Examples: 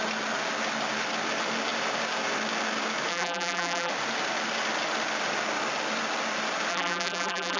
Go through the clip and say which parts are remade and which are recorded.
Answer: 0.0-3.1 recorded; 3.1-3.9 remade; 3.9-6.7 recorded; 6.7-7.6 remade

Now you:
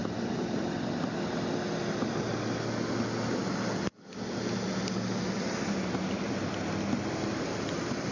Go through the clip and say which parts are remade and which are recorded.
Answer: 0.0-1.3 remade; 1.3-8.1 recorded

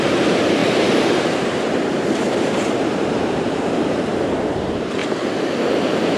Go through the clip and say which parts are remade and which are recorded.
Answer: 0.0-5.0 remade; 5.0-5.7 recorded; 5.7-6.2 remade

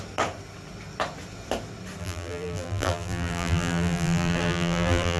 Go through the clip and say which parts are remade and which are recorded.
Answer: 0.0-2.0 recorded; 2.0-5.2 remade

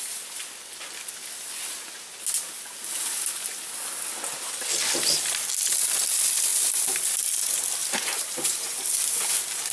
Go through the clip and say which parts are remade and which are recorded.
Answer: 0.0-9.7 recorded